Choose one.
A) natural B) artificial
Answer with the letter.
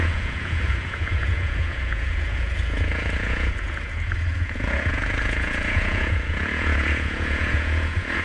B